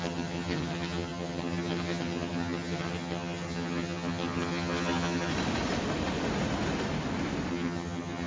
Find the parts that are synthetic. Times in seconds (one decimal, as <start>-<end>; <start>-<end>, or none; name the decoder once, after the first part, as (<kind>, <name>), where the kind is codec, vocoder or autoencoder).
0.0-5.3 (vocoder, HiFi-GAN); 7.5-8.3